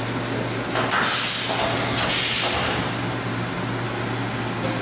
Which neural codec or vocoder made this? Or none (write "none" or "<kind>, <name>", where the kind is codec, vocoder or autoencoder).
none